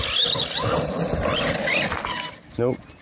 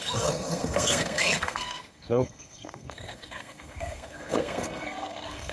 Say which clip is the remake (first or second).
second